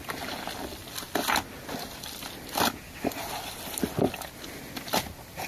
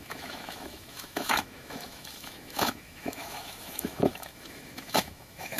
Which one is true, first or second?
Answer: first